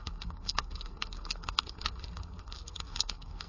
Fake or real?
fake